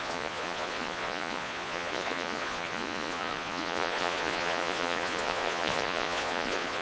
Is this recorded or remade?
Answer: remade